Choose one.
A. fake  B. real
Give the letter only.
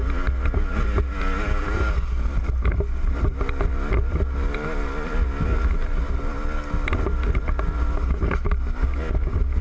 B